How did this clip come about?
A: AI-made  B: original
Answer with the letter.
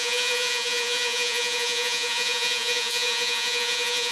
A